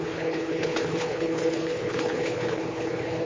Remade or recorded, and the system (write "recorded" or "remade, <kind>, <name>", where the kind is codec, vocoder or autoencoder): remade, codec, HILCodec